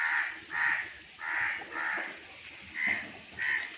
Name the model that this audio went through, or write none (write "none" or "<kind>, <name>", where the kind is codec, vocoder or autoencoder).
none